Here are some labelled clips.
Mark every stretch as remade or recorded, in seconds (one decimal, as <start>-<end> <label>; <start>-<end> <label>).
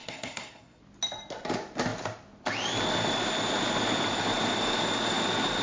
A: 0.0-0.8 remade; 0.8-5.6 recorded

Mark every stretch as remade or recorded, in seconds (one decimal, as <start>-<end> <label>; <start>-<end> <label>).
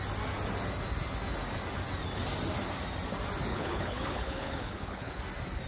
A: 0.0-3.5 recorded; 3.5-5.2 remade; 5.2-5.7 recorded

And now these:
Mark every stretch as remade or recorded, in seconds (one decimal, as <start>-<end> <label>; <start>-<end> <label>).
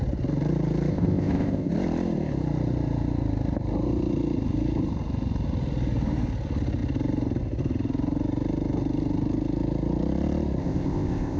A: 0.0-0.9 recorded; 0.9-1.7 remade; 1.7-10.6 recorded; 10.6-11.4 remade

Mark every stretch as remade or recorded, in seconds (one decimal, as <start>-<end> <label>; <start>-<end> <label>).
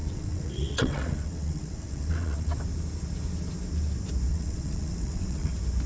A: 0.0-2.6 remade; 2.6-4.3 recorded; 4.3-5.5 remade; 5.5-5.9 recorded